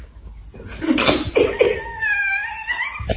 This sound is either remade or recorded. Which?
recorded